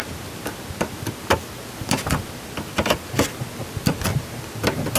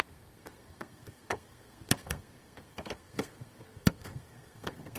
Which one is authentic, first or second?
first